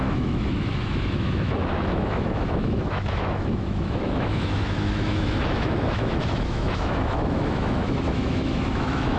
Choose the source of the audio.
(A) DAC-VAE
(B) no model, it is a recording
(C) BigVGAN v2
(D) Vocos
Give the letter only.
A